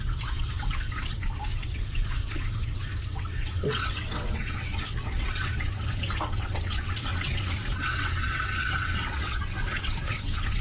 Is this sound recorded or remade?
remade